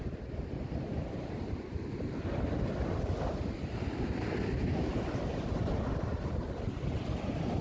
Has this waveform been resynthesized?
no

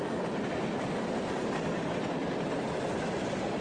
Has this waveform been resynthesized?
no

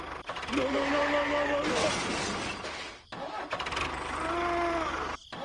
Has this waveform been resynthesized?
no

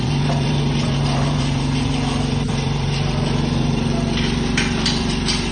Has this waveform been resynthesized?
yes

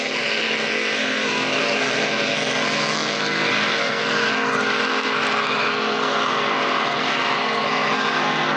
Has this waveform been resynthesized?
yes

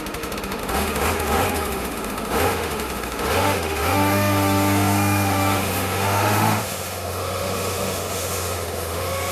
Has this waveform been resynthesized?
yes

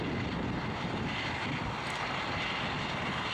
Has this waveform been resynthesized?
no